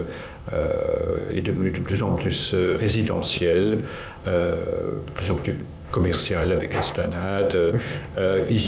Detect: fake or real fake